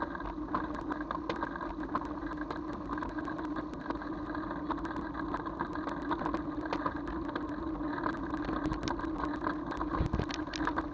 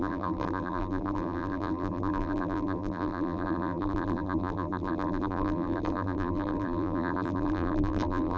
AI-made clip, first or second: second